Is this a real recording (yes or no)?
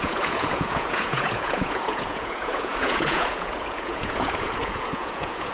no